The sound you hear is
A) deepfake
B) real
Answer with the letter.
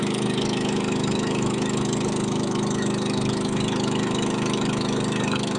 A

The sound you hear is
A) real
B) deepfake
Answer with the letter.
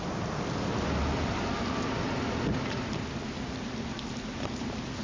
A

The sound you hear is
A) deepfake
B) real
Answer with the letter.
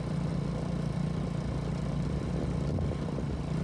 A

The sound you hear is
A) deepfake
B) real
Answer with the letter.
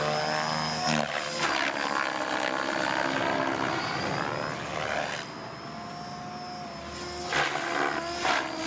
B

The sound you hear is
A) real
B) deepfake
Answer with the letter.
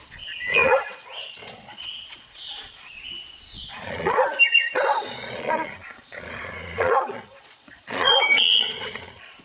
B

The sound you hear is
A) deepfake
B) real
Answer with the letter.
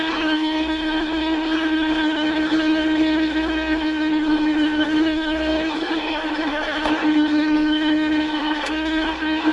A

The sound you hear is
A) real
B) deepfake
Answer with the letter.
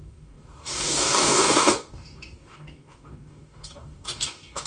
B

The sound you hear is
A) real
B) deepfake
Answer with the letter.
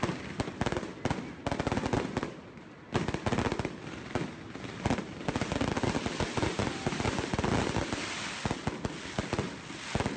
A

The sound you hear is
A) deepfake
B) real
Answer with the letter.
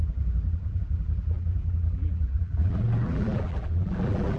A